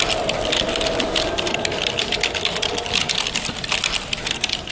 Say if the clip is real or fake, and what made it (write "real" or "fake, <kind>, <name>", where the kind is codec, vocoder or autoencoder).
real